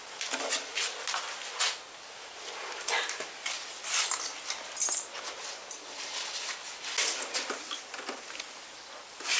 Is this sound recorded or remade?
recorded